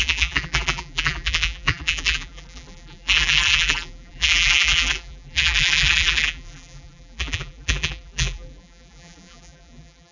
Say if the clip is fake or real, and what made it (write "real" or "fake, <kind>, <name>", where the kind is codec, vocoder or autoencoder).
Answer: fake, vocoder, BigVGAN v2